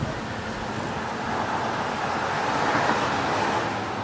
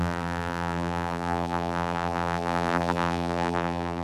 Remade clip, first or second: second